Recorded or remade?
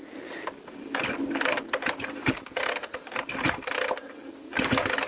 recorded